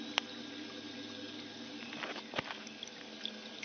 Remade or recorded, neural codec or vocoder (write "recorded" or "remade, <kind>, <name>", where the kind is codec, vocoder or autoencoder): recorded